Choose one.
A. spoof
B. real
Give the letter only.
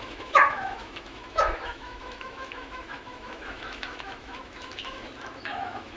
A